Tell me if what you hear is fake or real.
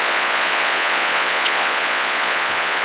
fake